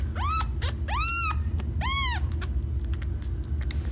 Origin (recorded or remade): recorded